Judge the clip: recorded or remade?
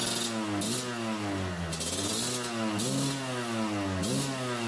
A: recorded